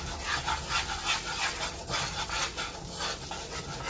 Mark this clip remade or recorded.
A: recorded